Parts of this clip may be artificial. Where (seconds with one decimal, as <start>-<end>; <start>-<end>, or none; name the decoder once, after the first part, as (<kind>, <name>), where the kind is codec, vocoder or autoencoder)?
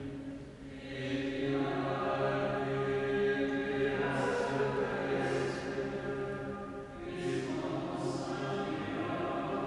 3.6-4.6 (vocoder, BigVGAN v2)